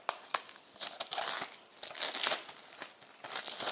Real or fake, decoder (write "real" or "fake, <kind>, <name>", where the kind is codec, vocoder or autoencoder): real